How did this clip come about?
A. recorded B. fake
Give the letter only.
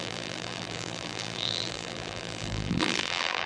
B